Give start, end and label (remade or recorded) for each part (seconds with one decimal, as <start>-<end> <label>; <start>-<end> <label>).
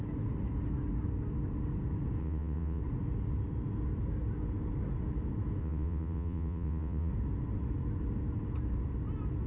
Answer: 0.0-2.2 recorded; 2.2-2.8 remade; 2.8-5.6 recorded; 5.6-7.1 remade; 7.1-9.5 recorded